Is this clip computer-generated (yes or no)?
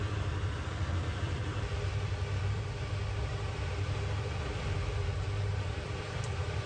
yes